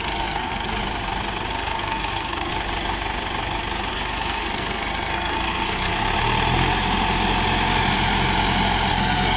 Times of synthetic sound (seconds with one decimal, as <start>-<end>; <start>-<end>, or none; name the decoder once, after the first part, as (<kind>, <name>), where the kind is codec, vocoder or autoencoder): 0.0-0.8 (codec, SNAC); 1.5-2.5; 3.9-5.9; 8.9-9.4